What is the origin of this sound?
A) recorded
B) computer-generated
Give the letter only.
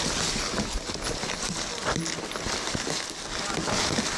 A